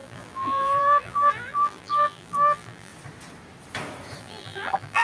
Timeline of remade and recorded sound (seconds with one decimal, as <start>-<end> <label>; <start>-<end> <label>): 0.0-2.9 remade; 2.9-4.2 recorded; 4.2-5.0 remade